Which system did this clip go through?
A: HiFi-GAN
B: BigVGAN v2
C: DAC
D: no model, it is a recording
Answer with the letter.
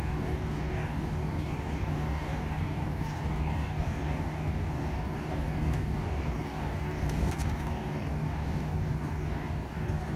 C